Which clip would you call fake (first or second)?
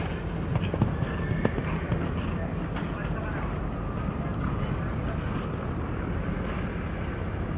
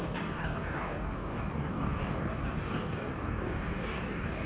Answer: second